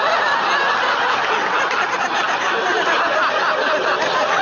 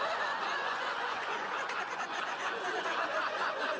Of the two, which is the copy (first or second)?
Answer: second